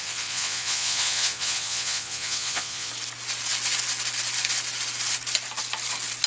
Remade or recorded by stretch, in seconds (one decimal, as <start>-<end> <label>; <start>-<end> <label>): 0.0-2.9 remade; 2.9-6.3 recorded